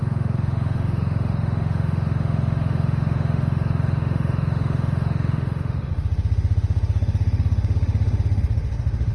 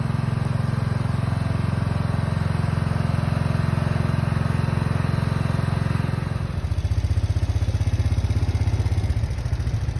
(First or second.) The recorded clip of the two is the second